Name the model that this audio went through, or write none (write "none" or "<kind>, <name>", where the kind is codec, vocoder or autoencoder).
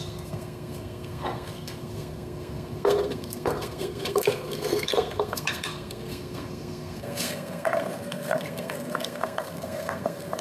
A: codec, SNAC